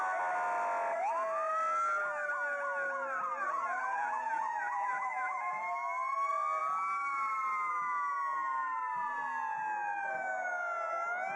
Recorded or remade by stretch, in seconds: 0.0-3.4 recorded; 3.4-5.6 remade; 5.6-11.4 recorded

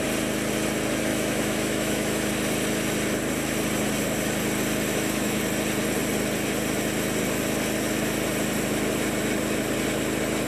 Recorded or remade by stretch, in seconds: 0.0-1.1 recorded; 1.1-2.3 remade; 2.3-4.9 recorded; 4.9-5.4 remade; 5.4-10.5 recorded

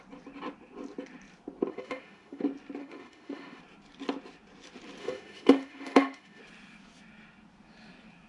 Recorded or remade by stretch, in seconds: 0.0-1.7 recorded; 1.7-2.4 remade; 2.4-2.8 recorded; 2.8-3.6 remade; 3.6-5.0 recorded; 5.0-6.4 remade; 6.4-8.3 recorded

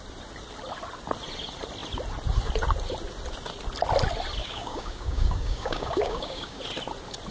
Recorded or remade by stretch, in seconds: 0.0-4.4 recorded; 4.4-6.6 remade; 6.6-7.3 recorded

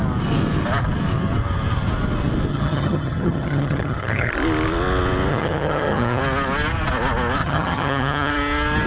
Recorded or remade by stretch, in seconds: 0.0-2.5 recorded; 2.5-4.3 remade; 4.3-5.3 recorded; 5.3-6.2 remade; 6.2-7.4 recorded; 7.4-8.3 remade; 8.3-8.9 recorded